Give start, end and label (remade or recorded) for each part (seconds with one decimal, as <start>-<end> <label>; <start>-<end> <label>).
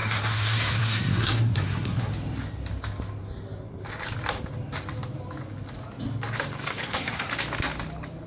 0.0-2.1 remade; 2.1-6.7 recorded; 6.7-7.3 remade; 7.3-8.3 recorded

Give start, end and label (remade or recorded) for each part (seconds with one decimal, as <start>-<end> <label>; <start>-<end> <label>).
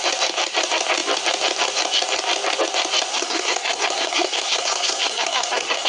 0.0-3.1 recorded; 3.1-5.9 remade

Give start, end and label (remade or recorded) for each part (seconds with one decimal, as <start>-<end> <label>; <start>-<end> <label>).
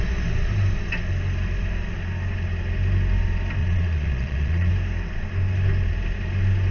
0.0-3.6 recorded; 3.6-4.7 remade; 4.7-6.7 recorded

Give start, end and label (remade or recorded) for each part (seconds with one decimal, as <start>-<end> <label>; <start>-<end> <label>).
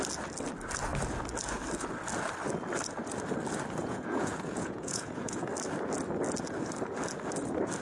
0.0-3.8 recorded; 3.8-5.5 remade; 5.5-7.8 recorded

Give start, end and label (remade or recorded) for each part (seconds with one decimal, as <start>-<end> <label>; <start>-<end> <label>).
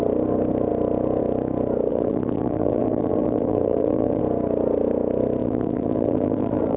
0.0-1.9 recorded; 1.9-4.2 remade; 4.2-5.4 recorded; 5.4-6.8 remade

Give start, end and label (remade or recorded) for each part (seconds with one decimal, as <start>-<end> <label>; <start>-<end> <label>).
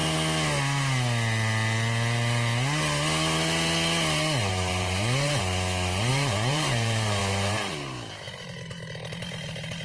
0.0-4.5 recorded; 4.5-5.4 remade; 5.4-6.1 recorded; 6.1-9.8 remade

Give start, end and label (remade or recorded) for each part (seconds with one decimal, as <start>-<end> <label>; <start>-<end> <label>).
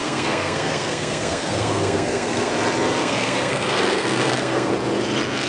0.0-2.5 remade; 2.5-3.0 recorded; 3.0-4.7 remade; 4.7-5.5 recorded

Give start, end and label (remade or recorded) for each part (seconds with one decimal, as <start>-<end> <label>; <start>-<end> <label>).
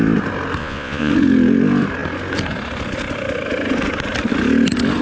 0.0-0.6 recorded; 0.6-1.1 remade; 1.1-5.0 recorded